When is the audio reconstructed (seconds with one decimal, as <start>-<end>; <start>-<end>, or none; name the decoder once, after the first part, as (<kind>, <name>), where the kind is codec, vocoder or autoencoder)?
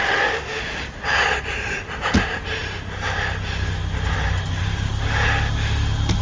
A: 0.0-0.6 (autoencoder, DAC-VAE)